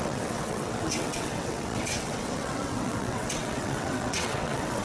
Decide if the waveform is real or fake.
fake